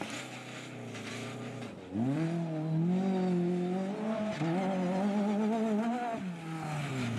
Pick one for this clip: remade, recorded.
recorded